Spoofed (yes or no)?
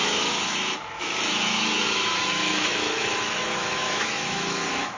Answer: yes